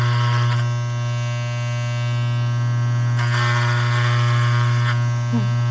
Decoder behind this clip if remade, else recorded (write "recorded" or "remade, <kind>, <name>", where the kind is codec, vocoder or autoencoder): recorded